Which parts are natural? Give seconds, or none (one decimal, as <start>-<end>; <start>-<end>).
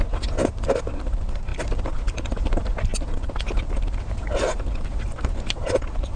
0.0-6.2